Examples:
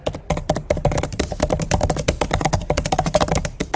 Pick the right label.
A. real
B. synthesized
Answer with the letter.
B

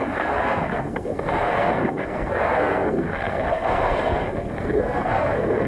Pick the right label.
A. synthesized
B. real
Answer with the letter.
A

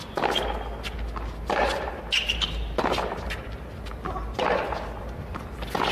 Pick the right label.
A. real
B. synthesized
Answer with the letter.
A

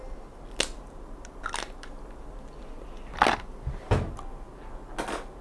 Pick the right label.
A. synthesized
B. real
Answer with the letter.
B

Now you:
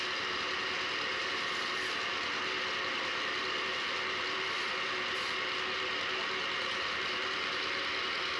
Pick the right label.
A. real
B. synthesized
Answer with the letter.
A